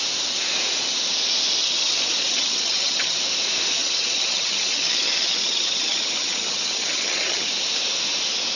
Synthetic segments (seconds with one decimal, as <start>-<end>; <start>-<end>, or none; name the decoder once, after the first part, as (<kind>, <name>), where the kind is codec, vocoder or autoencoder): 1.6-3.2 (vocoder, HiFi-GAN); 3.8-7.5